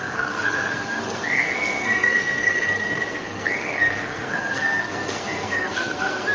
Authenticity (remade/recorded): remade